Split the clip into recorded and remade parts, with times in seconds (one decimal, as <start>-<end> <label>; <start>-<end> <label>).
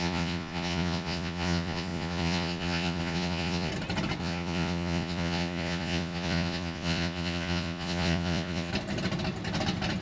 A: 0.0-3.7 remade; 3.7-4.2 recorded; 4.2-8.7 remade; 8.7-10.0 recorded